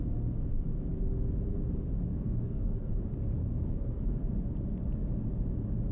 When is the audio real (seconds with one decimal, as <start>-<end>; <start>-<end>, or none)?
0.0-2.1; 2.9-3.4; 4.3-5.9